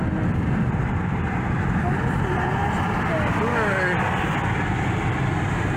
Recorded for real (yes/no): yes